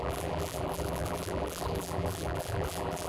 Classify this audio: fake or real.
fake